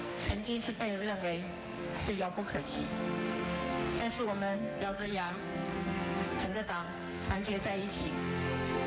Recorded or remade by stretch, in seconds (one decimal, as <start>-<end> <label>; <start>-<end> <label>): 0.0-8.9 remade

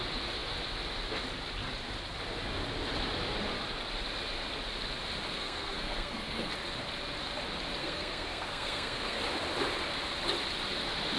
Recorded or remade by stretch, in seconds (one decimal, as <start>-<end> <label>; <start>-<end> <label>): 0.0-5.3 recorded; 5.3-6.5 remade; 6.5-7.8 recorded; 7.8-9.2 remade; 9.2-11.2 recorded

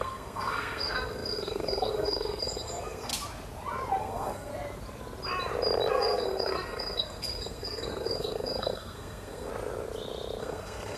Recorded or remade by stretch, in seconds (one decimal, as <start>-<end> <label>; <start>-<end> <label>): 0.0-3.1 remade; 3.1-4.0 recorded; 4.0-4.5 remade; 4.5-5.9 recorded; 5.9-9.5 remade; 9.5-10.4 recorded; 10.4-11.0 remade

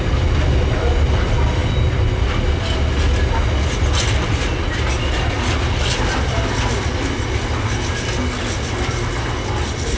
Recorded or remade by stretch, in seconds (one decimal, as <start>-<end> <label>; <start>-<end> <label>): 0.0-10.0 recorded

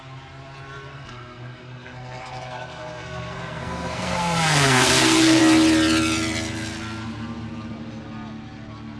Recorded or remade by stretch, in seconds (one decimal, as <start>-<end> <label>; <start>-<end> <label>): 0.0-0.9 recorded; 0.9-5.4 remade; 5.4-9.0 recorded